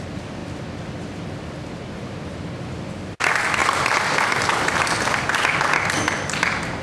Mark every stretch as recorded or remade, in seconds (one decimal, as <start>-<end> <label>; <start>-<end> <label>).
0.0-6.8 recorded